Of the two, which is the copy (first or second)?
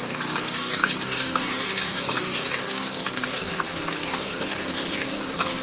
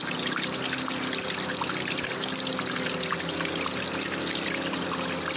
first